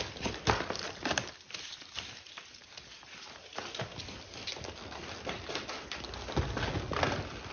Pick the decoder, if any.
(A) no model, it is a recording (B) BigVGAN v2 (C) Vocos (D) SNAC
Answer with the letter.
A